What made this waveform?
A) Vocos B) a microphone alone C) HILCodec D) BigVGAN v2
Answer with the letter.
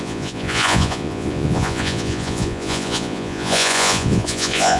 A